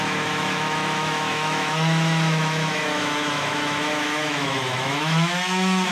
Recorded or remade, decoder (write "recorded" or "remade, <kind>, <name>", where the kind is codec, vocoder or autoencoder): remade, autoencoder, DAC-VAE